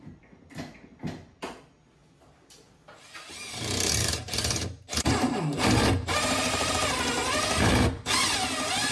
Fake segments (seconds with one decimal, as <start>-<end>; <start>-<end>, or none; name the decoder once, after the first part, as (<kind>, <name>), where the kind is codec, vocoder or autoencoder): 2.0-6.7 (vocoder, BigVGAN v2)